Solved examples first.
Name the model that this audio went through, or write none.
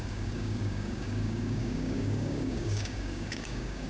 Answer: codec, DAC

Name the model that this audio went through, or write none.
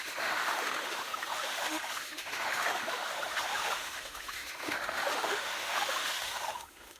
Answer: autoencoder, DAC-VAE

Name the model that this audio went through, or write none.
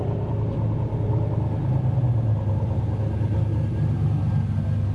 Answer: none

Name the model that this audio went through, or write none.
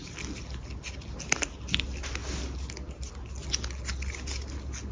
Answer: none